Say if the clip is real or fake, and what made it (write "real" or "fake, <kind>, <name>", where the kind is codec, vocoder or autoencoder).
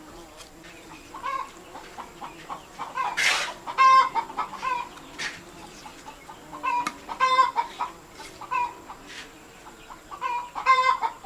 fake, vocoder, BigVGAN v2